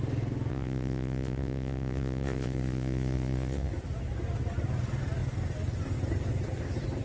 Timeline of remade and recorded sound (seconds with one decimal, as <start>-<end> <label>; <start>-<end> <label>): 0.0-0.5 recorded; 0.5-3.7 remade; 3.7-7.0 recorded